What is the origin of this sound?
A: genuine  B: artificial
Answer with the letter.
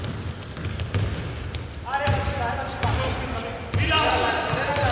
A